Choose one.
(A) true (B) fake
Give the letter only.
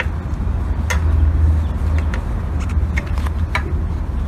A